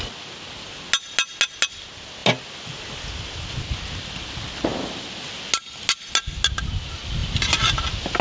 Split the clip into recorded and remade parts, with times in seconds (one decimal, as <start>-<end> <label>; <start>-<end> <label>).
0.0-8.2 recorded